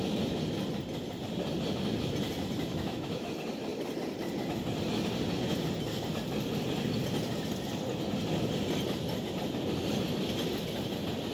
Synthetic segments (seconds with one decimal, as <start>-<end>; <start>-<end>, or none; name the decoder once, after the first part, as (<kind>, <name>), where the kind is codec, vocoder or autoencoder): 2.7-3.3 (autoencoder, DAC-VAE)